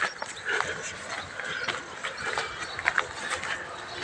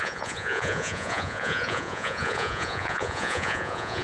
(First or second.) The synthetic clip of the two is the second